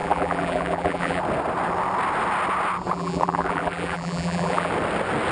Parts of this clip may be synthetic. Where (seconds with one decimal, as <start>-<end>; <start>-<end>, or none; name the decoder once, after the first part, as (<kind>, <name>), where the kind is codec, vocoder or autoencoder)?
0.0-1.2 (vocoder, BigVGAN v2); 2.9-4.7